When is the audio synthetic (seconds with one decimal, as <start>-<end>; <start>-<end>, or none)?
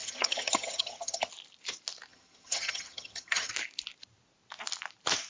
0.0-1.3; 2.1-3.5